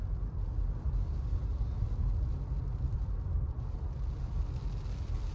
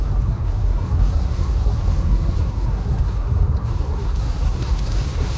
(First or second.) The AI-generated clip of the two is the second